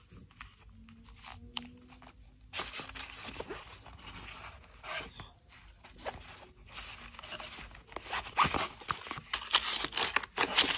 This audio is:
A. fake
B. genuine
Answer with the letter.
B